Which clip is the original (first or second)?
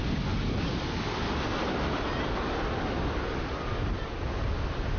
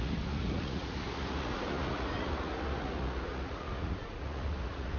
first